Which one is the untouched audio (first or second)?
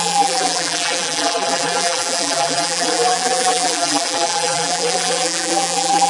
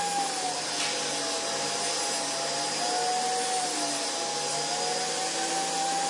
second